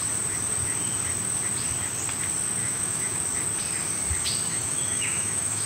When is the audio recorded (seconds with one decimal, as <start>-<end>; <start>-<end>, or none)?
0.0-2.6; 3.2-4.5